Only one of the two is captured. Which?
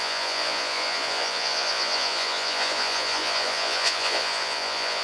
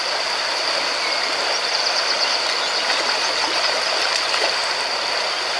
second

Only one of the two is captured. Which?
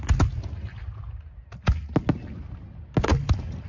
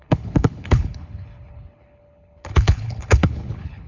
first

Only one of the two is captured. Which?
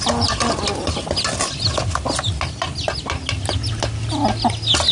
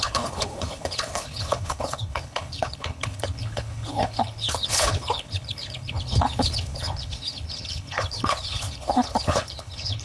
first